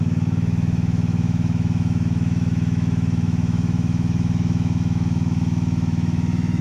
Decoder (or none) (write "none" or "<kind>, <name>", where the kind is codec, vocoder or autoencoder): autoencoder, DAC-VAE